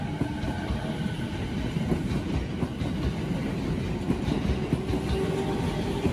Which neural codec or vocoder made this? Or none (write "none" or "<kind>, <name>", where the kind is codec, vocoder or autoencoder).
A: none